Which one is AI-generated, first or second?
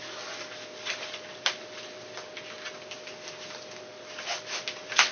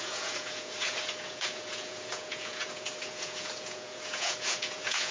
second